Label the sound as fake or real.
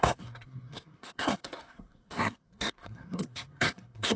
fake